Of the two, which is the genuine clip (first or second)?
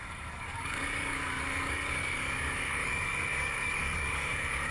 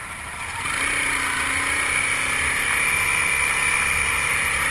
second